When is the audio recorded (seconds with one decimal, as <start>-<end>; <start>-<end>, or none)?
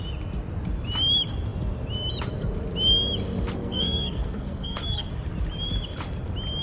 0.0-3.6; 5.1-6.6